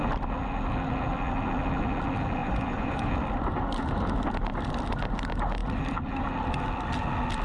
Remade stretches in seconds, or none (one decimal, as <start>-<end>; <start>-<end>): 2.4-3.1